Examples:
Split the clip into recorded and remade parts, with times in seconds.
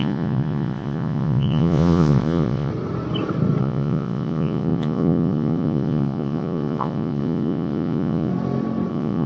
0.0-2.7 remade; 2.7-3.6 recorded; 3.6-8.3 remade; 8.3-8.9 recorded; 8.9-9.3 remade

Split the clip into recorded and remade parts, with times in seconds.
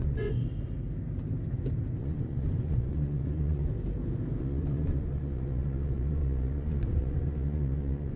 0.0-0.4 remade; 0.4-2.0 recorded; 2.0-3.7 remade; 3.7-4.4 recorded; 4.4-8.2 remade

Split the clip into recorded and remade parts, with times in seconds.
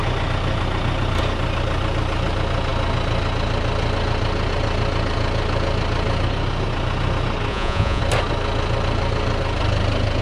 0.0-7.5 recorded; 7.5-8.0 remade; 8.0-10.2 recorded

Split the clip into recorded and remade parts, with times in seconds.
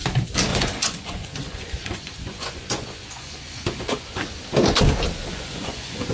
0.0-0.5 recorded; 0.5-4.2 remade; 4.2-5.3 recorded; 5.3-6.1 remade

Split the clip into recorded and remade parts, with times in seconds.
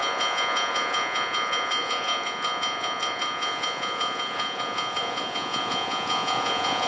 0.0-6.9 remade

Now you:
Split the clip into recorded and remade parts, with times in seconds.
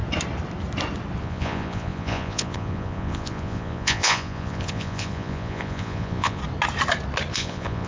0.0-1.2 recorded; 1.2-6.4 remade; 6.4-7.3 recorded; 7.3-7.9 remade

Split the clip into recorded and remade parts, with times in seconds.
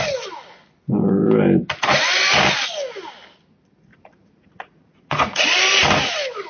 0.0-3.9 recorded; 3.9-5.4 remade; 5.4-6.5 recorded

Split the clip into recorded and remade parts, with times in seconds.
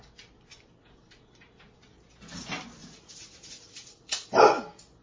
0.0-2.8 recorded; 2.8-4.3 remade; 4.3-5.0 recorded